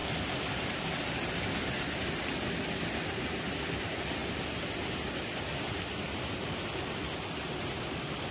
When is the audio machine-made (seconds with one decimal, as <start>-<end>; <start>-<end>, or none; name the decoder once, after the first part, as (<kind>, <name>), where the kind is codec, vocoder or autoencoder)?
none